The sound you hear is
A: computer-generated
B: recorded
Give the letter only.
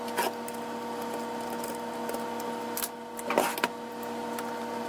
B